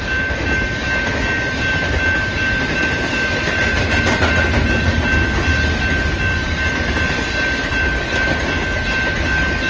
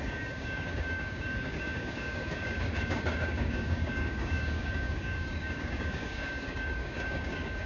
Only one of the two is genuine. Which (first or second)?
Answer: first